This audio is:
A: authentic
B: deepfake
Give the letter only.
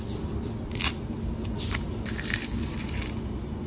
A